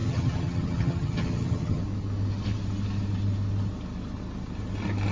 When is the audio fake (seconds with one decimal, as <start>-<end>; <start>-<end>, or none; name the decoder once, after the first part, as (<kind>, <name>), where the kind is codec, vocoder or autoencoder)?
0.0-1.8 (vocoder, HiFi-GAN)